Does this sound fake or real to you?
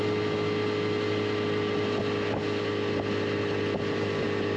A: real